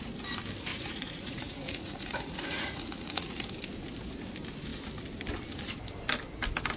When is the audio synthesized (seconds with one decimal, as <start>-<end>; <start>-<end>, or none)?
0.7-3.4